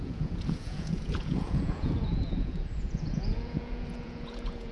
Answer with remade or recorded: remade